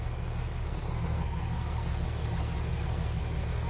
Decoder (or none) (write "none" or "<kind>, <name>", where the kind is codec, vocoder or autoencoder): codec, SNAC